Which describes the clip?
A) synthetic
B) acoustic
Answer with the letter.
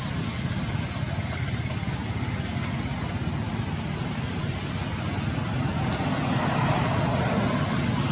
B